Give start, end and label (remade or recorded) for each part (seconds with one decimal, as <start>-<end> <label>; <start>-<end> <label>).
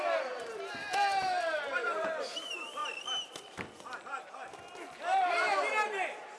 0.0-2.8 remade; 2.8-4.2 recorded; 4.2-6.4 remade